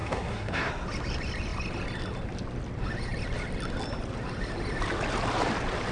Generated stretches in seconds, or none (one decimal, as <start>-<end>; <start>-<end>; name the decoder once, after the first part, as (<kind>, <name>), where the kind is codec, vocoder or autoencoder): 0.0-0.7 (codec, SNAC)